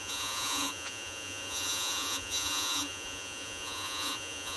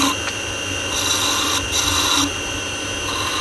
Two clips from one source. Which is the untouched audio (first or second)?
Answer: second